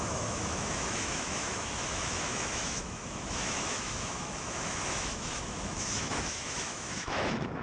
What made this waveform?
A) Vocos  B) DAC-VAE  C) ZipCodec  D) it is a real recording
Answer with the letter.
B